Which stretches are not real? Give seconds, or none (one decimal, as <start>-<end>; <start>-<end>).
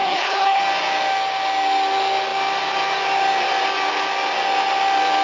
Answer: 0.0-0.6